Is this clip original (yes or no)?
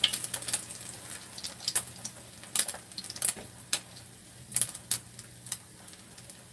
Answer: yes